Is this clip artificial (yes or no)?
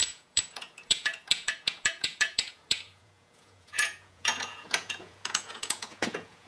yes